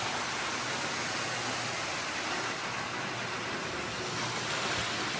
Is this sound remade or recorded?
recorded